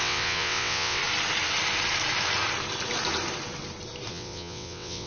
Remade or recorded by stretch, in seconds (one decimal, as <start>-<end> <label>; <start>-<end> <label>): 0.0-1.0 remade; 1.0-4.1 recorded; 4.1-5.1 remade